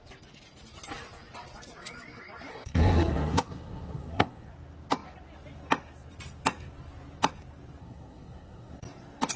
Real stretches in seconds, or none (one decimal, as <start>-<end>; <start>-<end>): 0.0-2.5; 4.5-7.8; 8.8-9.4